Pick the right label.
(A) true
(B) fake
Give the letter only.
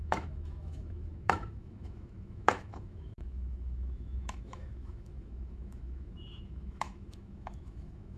B